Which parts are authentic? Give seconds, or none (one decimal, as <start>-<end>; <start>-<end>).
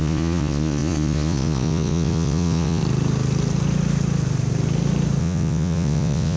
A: 2.8-5.2